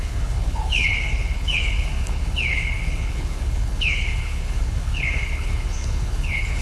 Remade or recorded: remade